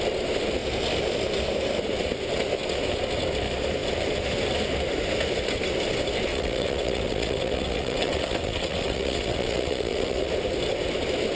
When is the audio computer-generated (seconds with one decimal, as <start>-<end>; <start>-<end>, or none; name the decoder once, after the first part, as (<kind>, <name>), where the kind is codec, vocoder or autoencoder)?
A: 6.3-10.3 (vocoder, WaveNeXt)